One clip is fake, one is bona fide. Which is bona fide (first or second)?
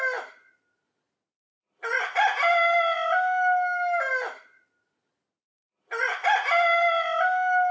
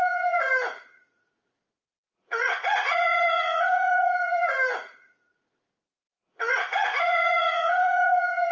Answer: first